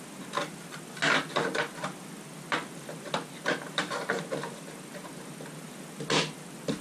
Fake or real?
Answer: real